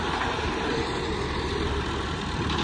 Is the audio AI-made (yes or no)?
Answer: yes